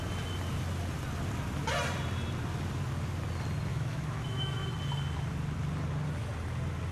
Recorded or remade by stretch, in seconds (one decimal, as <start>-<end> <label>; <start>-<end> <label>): 0.0-3.7 recorded; 3.7-4.6 remade; 4.6-6.9 recorded